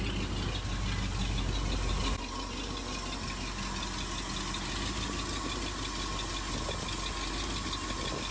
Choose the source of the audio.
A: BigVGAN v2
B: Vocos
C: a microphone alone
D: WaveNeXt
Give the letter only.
C